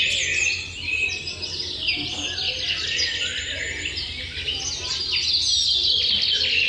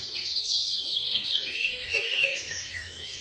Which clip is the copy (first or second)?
second